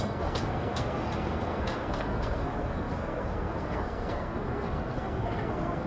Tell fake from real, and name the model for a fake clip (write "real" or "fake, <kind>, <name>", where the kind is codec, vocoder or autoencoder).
fake, codec, SNAC